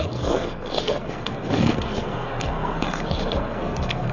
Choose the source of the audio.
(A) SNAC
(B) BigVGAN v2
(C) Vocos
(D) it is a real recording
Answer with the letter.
A